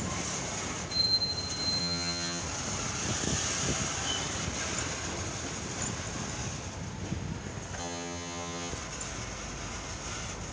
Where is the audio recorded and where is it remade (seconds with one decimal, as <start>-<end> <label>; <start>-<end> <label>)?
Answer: 0.0-1.8 recorded; 1.8-2.4 remade; 2.4-7.8 recorded; 7.8-8.7 remade; 8.7-10.5 recorded